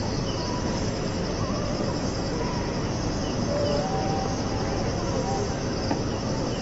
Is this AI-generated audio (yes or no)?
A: yes